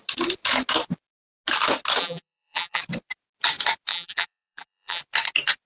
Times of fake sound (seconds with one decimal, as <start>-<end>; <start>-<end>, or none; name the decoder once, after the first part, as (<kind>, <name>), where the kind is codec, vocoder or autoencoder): 2.0-2.8 (vocoder, BigVGAN v2); 3.9-5.0